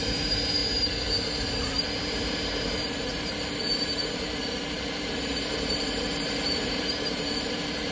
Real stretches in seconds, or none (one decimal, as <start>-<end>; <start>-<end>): 0.6-2.0